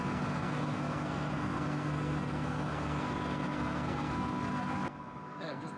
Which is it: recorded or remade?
remade